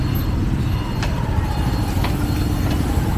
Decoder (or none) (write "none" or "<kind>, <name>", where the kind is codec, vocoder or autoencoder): none